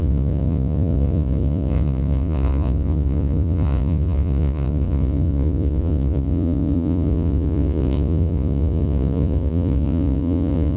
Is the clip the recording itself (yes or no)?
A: no